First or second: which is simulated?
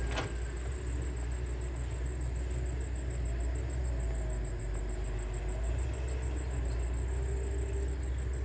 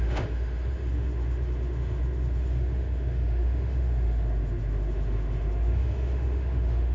second